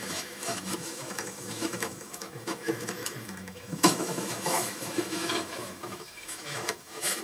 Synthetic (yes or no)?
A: yes